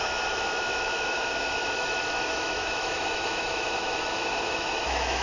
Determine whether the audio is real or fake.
fake